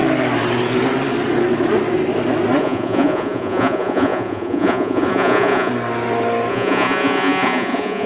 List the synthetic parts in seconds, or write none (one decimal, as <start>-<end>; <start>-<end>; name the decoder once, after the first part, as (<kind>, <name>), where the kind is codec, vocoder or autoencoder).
2.6-5.7 (vocoder, Vocos); 6.5-8.1